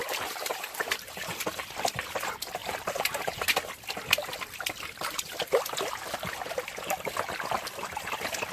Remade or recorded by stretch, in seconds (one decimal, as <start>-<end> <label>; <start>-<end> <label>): 0.0-1.4 remade; 1.4-2.6 recorded; 2.6-3.5 remade; 3.5-8.5 recorded